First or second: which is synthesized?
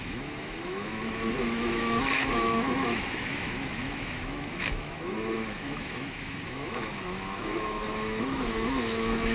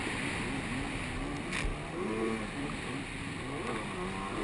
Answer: first